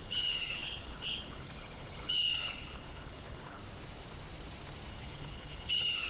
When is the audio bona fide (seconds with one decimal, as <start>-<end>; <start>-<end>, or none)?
3.6-4.9